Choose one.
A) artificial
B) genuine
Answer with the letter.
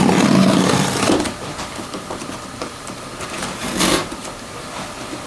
A